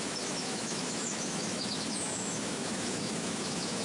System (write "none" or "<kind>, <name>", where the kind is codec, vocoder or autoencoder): autoencoder, DAC-VAE